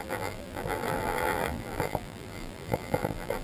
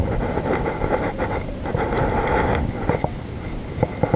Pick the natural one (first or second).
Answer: second